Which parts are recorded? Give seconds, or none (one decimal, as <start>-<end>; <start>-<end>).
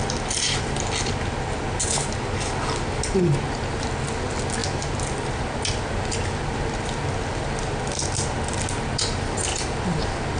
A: 0.0-10.4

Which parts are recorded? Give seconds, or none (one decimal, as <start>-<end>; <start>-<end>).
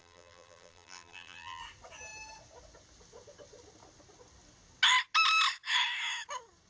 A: 1.6-6.7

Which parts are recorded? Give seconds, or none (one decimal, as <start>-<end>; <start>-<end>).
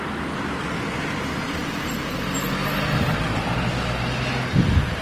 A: 0.0-5.0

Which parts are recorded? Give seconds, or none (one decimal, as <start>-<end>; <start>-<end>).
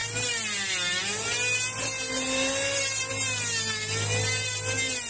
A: 0.0-5.1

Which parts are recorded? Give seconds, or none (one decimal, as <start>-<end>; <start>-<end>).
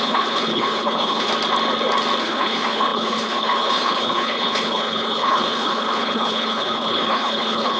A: 1.3-2.2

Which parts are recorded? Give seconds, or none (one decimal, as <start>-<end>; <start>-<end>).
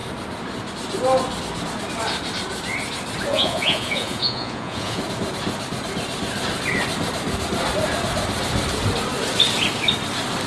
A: 0.0-3.3; 5.0-10.5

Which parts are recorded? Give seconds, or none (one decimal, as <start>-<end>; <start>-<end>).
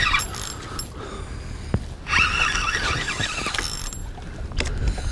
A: 0.0-5.1